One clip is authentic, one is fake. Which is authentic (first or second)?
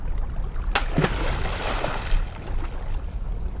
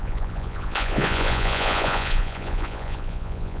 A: first